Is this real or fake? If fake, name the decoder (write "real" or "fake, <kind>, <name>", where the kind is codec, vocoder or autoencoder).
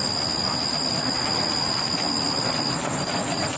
real